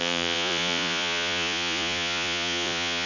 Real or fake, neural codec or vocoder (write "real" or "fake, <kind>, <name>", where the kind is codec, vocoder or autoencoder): fake, vocoder, Vocos